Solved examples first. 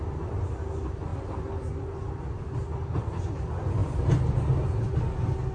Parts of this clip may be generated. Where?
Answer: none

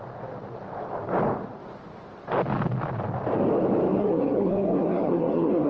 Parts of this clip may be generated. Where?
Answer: 4.0-5.7 (codec, SNAC)

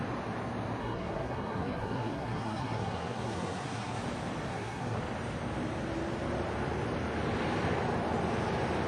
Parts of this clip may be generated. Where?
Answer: 0.8-4.0 (codec, SNAC); 4.5-5.0

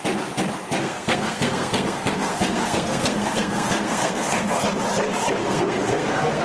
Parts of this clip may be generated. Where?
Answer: 0.8-4.6 (codec, SNAC); 5.4-6.4

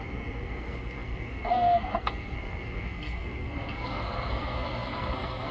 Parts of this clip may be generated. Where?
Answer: 0.0-5.5 (codec, SNAC)

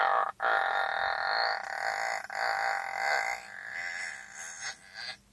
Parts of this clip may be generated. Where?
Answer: none

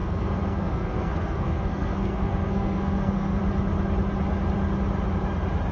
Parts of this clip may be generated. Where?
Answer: 0.0-3.4 (codec, SNAC)